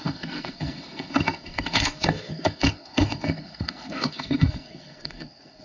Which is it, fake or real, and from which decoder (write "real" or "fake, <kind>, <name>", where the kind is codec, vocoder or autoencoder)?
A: fake, codec, SNAC